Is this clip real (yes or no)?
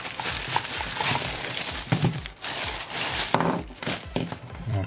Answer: no